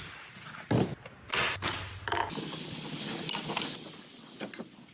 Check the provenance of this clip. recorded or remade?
recorded